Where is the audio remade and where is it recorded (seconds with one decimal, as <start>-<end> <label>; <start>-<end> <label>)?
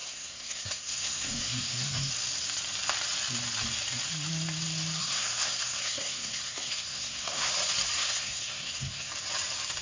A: 0.0-2.1 remade; 2.1-5.0 recorded; 5.0-7.5 remade; 7.5-8.0 recorded; 8.0-9.1 remade; 9.1-9.8 recorded